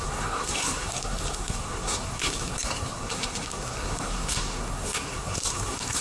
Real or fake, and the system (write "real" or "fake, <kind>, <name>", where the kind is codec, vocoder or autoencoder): fake, codec, SNAC